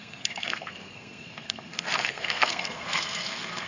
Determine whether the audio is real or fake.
fake